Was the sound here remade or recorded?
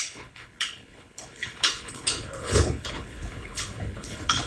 remade